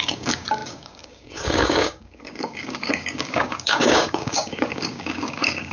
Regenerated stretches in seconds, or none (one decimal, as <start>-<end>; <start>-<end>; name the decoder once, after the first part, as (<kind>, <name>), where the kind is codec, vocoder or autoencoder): 0.0-5.7 (codec, DAC)